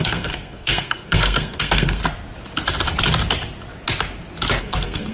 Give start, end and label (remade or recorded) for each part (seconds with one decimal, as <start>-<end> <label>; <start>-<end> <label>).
0.0-2.0 remade; 2.0-4.6 recorded; 4.6-5.1 remade